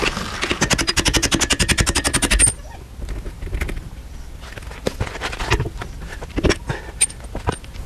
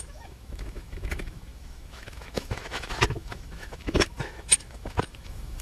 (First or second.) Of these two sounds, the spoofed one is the second